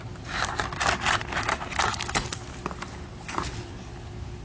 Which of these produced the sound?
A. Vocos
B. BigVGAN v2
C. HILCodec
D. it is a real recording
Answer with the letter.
D